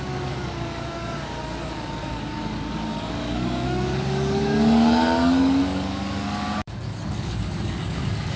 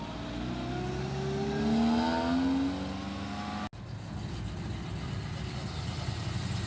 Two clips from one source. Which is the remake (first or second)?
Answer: first